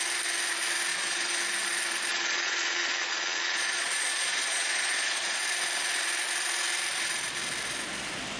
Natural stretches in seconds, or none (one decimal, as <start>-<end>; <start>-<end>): 0.0-0.9; 1.4-2.1; 5.4-8.4